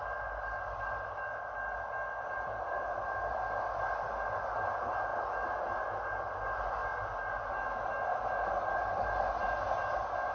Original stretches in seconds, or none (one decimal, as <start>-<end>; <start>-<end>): 0.0-10.3